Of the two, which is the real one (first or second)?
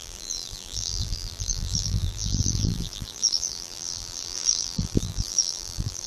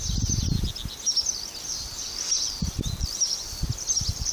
second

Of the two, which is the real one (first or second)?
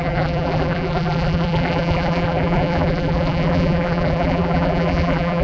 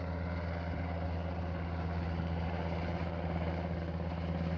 second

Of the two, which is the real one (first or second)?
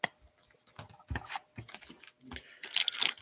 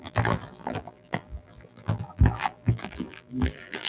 first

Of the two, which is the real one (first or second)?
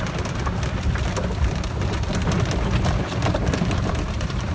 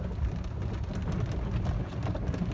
second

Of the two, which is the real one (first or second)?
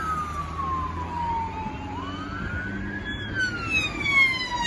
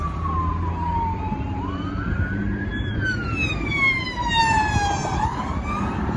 first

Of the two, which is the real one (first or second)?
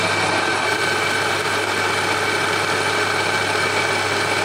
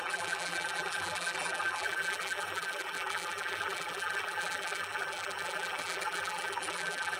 first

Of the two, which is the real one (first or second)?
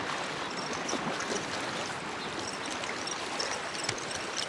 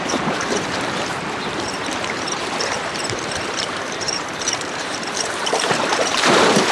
first